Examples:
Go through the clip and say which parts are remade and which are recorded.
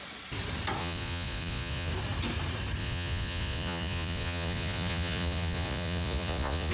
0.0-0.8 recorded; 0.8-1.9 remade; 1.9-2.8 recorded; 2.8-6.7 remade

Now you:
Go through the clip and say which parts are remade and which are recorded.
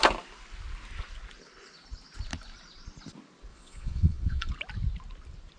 0.0-3.5 recorded; 3.5-4.5 remade; 4.5-5.6 recorded